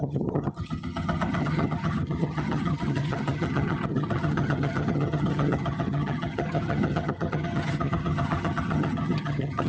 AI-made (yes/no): yes